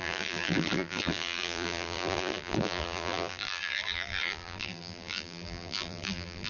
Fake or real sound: fake